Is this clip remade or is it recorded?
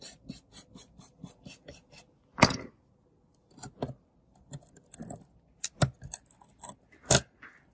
recorded